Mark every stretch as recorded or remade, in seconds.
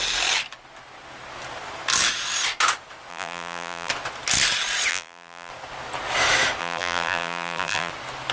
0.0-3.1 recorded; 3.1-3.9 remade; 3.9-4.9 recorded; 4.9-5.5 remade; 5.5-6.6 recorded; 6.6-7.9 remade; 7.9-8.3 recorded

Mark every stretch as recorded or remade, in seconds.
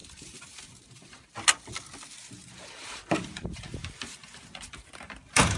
0.0-1.3 remade; 1.3-2.2 recorded; 2.2-5.6 remade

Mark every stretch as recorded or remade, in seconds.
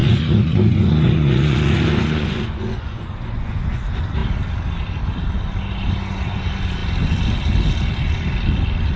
0.0-3.8 remade; 3.8-9.0 recorded